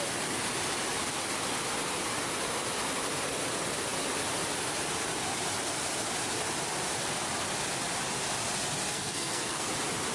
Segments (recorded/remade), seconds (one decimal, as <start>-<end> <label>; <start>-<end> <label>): 0.0-8.9 recorded; 8.9-9.7 remade; 9.7-10.1 recorded